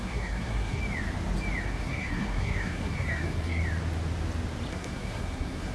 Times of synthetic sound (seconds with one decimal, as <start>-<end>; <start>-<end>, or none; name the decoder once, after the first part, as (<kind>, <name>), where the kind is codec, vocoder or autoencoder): 0.0-0.8 (codec, SNAC); 1.6-3.6; 4.7-5.7